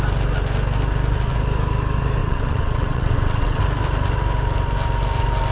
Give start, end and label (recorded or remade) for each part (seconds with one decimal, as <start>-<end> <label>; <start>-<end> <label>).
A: 0.0-2.2 recorded; 2.2-3.6 remade; 3.6-5.5 recorded